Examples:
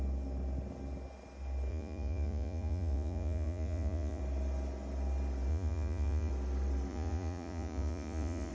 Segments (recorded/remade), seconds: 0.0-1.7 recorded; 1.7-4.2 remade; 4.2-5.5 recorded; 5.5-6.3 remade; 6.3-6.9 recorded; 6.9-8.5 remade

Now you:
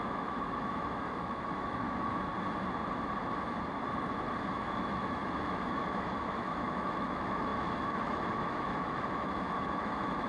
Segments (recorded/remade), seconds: 0.0-2.3 remade; 2.3-4.5 recorded; 4.5-10.3 remade

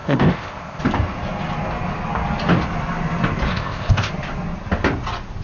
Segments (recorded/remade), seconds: 0.0-0.8 remade; 0.8-3.5 recorded; 3.5-4.1 remade; 4.1-5.4 recorded

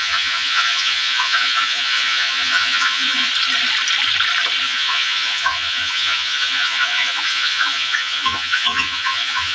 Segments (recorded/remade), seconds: 0.0-3.3 remade; 3.3-4.6 recorded; 4.6-9.5 remade

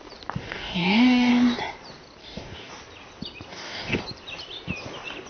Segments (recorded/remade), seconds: 0.0-0.4 recorded; 0.4-1.3 remade; 1.3-2.2 recorded; 2.2-2.7 remade; 2.7-3.5 recorded; 3.5-4.0 remade; 4.0-5.3 recorded

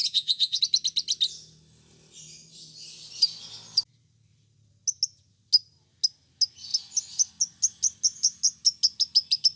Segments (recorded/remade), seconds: 0.0-0.6 remade; 0.6-9.6 recorded